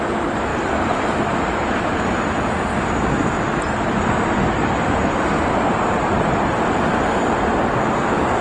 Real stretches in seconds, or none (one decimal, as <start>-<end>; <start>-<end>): 0.0-8.4